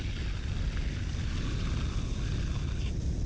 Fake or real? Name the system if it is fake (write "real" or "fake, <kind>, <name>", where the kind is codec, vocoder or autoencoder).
real